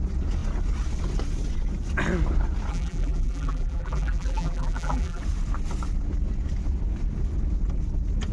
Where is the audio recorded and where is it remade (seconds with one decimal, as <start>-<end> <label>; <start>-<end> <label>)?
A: 0.0-2.7 recorded; 2.7-5.2 remade; 5.2-8.3 recorded